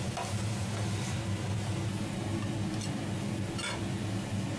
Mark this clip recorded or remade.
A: recorded